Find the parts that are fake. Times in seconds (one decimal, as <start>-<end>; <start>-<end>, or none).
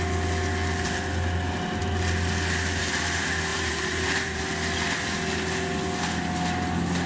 3.5-4.4